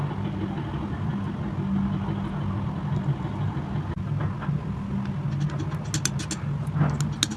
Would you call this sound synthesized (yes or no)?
no